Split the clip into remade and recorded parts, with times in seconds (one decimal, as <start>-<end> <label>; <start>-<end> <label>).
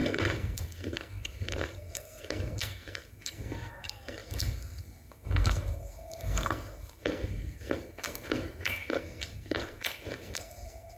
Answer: 0.0-11.0 remade